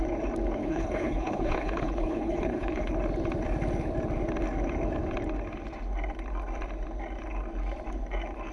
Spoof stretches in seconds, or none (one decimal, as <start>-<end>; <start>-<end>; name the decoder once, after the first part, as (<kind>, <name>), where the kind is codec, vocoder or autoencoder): 0.6-2.9 (codec, HILCodec)